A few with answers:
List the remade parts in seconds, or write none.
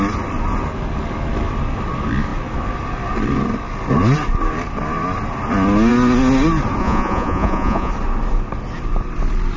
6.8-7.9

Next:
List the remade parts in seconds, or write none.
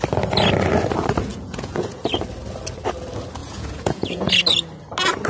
1.3-2.0; 3.4-4.3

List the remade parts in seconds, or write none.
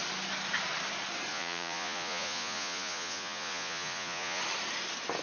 1.3-4.4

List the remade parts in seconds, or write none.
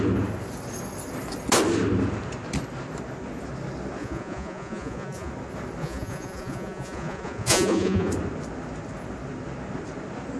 4.0-5.3; 5.8-8.1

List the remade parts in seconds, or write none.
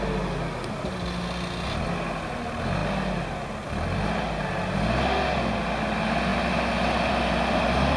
none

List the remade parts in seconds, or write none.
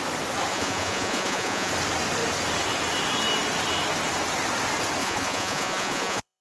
0.5-1.7; 5.0-6.4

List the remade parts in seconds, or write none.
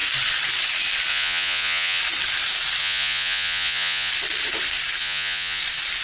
1.1-2.0; 2.8-4.1; 5.0-5.6